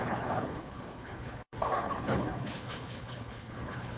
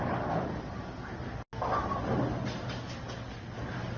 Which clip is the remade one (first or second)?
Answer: first